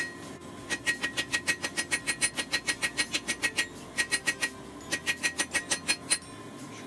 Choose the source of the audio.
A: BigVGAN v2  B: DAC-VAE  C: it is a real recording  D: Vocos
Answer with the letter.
C